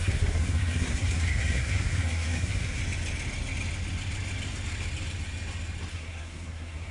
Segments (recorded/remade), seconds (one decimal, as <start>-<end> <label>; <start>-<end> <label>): 0.0-2.8 remade; 2.8-5.9 recorded; 5.9-6.9 remade